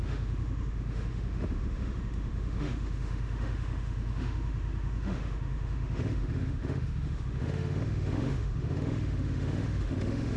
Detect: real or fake fake